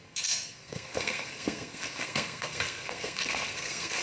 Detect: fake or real fake